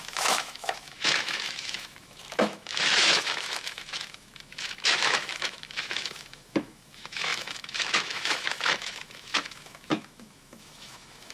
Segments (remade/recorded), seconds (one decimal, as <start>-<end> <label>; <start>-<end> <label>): 0.0-11.3 remade